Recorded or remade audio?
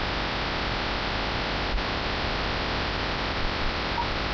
recorded